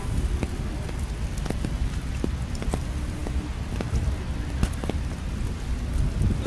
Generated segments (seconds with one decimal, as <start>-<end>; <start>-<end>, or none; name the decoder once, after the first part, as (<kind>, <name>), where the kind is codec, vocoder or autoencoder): none